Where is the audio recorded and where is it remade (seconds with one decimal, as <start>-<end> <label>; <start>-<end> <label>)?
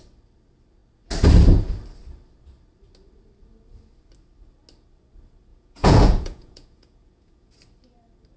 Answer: 0.0-5.5 recorded; 5.5-7.5 remade; 7.5-8.4 recorded